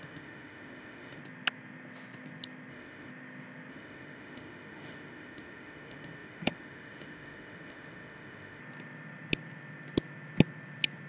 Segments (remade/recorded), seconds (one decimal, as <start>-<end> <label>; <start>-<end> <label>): 0.0-1.2 remade; 1.2-2.7 recorded; 2.7-3.1 remade; 3.1-3.7 recorded; 3.7-8.6 remade; 8.6-11.1 recorded